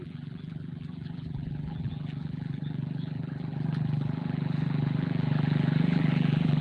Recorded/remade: remade